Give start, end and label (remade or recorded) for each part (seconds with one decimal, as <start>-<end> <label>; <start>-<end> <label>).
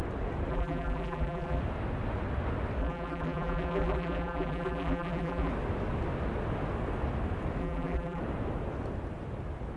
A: 0.0-0.5 recorded; 0.5-1.6 remade; 1.6-2.8 recorded; 2.8-5.5 remade; 5.5-7.6 recorded; 7.6-8.2 remade; 8.2-9.8 recorded